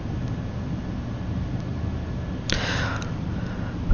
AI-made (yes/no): no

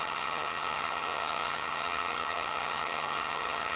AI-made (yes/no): yes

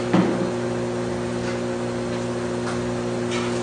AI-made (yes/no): no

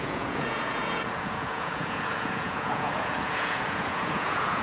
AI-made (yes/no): yes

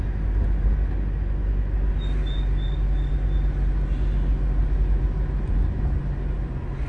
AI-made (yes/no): no